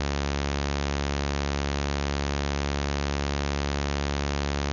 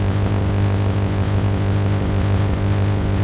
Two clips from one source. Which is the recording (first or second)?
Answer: first